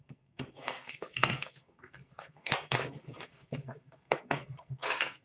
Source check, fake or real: fake